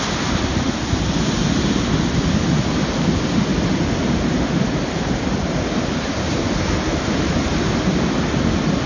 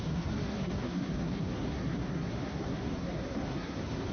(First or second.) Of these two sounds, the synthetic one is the second